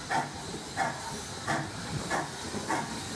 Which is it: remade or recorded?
recorded